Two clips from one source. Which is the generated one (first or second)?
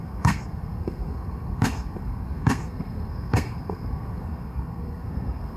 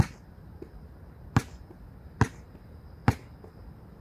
first